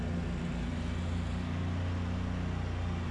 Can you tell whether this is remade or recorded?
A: recorded